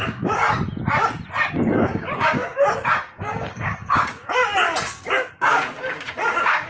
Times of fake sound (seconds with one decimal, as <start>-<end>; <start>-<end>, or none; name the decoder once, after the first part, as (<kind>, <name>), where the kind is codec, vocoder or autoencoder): 0.0-0.4 (codec, DAC); 1.5-4.4; 5.3-6.7